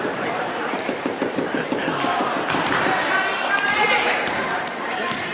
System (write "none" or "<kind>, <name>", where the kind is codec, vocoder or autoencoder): vocoder, BigVGAN v2